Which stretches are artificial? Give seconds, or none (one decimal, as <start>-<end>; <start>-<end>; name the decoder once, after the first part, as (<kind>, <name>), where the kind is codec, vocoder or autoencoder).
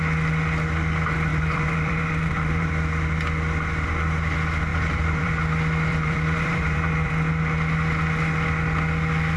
1.3-2.7 (vocoder, BigVGAN v2); 4.7-5.3; 5.9-7.1